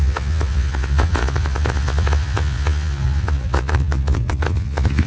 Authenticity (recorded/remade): remade